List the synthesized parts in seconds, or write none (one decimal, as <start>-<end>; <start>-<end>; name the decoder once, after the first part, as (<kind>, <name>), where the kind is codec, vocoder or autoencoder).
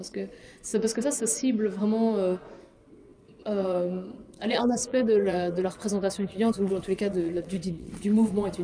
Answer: 0.0-0.7 (vocoder, WaveNeXt); 2.6-8.6